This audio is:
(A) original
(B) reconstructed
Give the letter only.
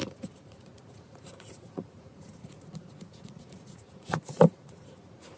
B